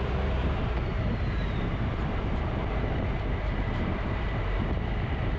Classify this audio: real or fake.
fake